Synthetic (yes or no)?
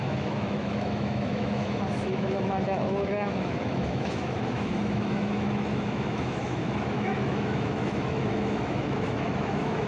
yes